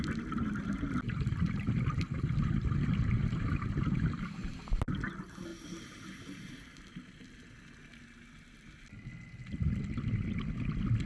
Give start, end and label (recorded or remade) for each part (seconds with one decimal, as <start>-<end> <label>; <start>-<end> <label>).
0.0-5.5 recorded; 5.5-6.5 remade; 6.5-11.1 recorded

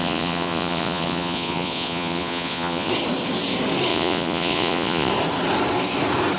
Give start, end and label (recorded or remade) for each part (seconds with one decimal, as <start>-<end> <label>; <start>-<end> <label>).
0.0-2.9 remade; 2.9-3.9 recorded; 3.9-5.1 remade; 5.1-6.4 recorded

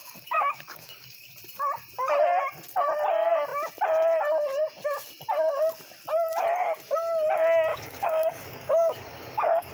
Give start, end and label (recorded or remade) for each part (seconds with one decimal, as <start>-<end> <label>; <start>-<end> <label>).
0.0-1.3 remade; 1.3-7.7 recorded; 7.7-9.7 remade

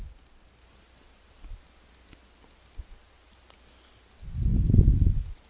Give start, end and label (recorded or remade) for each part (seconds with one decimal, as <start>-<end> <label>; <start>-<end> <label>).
0.0-0.5 remade; 0.5-5.5 recorded

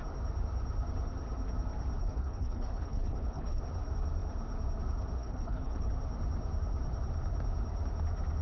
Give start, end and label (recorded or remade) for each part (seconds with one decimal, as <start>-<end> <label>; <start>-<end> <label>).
0.0-2.0 recorded; 2.0-3.6 remade; 3.6-5.2 recorded; 5.2-5.9 remade; 5.9-8.4 recorded

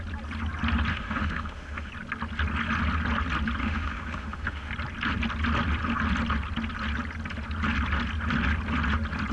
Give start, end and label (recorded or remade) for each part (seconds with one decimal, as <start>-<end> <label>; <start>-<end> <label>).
0.0-0.9 recorded; 0.9-1.9 remade; 1.9-3.6 recorded; 3.6-4.7 remade; 4.7-9.3 recorded

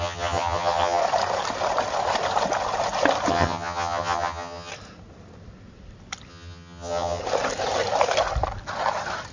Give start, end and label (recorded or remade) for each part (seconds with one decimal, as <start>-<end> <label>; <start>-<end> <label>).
0.0-1.0 remade; 1.0-3.3 recorded; 3.3-4.7 remade; 4.7-6.3 recorded; 6.3-7.2 remade; 7.2-9.3 recorded

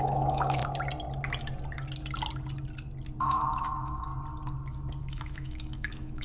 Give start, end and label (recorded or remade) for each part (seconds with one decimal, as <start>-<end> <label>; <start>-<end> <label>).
0.0-0.6 remade; 0.6-3.2 recorded; 3.2-4.1 remade; 4.1-5.0 recorded; 5.0-6.2 remade